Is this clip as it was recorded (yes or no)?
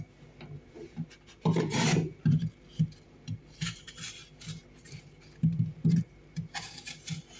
no